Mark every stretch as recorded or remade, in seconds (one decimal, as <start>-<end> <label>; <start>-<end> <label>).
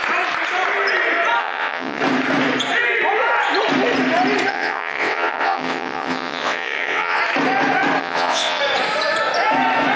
0.0-1.4 recorded; 1.4-2.0 remade; 2.0-4.5 recorded; 4.5-7.2 remade; 7.2-8.0 recorded; 8.0-8.6 remade; 8.6-10.0 recorded